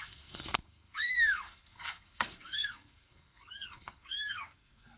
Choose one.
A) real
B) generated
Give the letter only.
B